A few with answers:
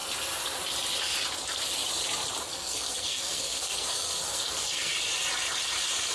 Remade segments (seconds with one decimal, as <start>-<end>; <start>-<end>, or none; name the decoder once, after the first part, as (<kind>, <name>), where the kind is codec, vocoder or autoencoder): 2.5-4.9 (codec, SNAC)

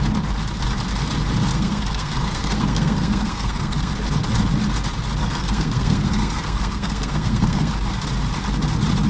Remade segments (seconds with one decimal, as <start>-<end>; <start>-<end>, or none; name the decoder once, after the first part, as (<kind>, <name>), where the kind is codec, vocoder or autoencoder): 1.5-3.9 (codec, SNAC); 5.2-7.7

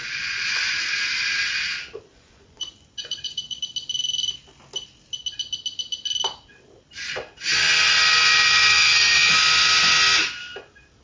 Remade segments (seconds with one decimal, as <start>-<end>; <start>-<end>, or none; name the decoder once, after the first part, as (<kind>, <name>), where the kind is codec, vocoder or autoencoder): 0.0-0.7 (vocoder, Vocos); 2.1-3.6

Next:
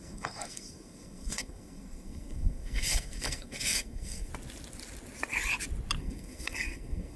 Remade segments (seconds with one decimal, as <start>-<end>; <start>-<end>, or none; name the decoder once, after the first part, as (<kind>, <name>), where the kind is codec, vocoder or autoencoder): 0.0-4.3 (codec, SNAC); 6.0-7.2

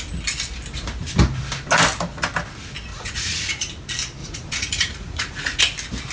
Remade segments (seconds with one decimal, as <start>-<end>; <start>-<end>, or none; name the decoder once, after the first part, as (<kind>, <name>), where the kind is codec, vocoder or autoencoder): 2.9-3.7 (vocoder, Vocos); 4.2-5.6

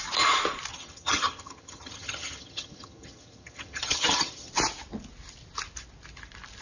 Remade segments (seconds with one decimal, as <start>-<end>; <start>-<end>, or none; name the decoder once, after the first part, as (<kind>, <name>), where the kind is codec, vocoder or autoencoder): 0.7-4.5 (vocoder, HiFi-GAN)